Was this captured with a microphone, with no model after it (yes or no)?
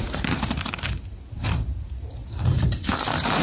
no